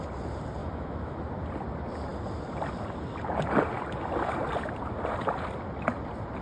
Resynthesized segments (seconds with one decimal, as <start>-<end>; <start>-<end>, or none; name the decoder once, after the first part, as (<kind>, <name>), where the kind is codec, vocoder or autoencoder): 0.6-1.2 (autoencoder, DAC-VAE)